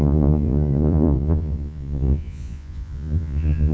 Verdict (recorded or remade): remade